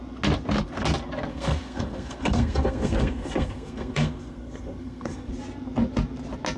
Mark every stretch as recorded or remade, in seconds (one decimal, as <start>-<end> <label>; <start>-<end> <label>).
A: 0.0-1.3 recorded; 1.3-5.3 remade; 5.3-6.6 recorded